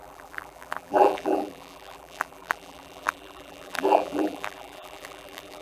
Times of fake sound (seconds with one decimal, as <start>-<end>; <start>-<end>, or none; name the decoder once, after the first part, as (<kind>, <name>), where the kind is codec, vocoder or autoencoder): 0.0-5.6 (vocoder, BigVGAN v2)

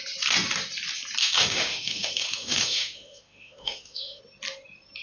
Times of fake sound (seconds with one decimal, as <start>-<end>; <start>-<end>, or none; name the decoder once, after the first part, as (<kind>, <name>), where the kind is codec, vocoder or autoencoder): 1.2-4.2 (autoencoder, DAC-VAE)

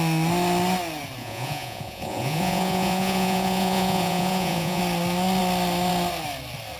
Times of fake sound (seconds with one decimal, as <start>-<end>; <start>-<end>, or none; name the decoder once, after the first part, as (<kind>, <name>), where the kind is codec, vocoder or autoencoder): 1.2-4.8 (vocoder, Vocos)